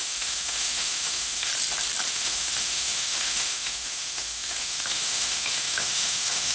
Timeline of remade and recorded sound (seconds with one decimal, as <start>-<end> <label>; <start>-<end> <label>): 0.0-1.5 remade; 1.5-2.1 recorded; 2.1-6.5 remade